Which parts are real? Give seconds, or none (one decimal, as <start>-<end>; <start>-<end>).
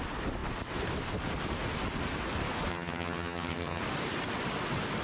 0.0-2.7; 3.8-5.0